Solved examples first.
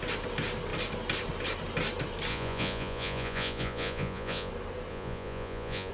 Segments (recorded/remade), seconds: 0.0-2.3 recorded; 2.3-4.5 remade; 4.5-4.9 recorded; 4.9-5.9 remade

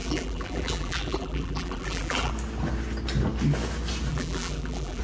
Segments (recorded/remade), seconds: 0.0-2.3 remade; 2.3-4.1 recorded; 4.1-5.0 remade

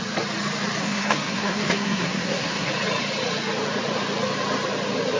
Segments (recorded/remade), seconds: 0.0-0.8 recorded; 0.8-2.7 remade; 2.7-5.2 recorded

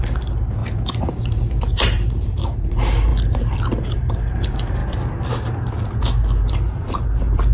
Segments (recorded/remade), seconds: 0.0-0.6 remade; 0.6-1.1 recorded; 1.1-3.1 remade; 3.1-3.8 recorded; 3.8-4.8 remade; 4.8-6.5 recorded; 6.5-7.5 remade